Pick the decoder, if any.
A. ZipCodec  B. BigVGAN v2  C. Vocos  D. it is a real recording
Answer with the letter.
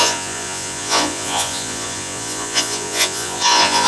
C